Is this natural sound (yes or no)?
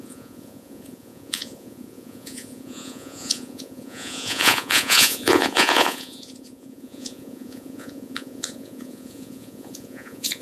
no